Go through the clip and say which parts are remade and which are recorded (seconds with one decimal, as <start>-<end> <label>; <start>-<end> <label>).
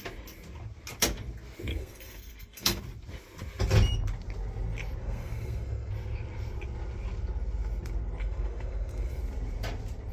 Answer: 0.0-1.7 recorded; 1.7-2.8 remade; 2.8-5.0 recorded; 5.0-5.9 remade; 5.9-8.2 recorded; 8.2-9.2 remade; 9.2-10.1 recorded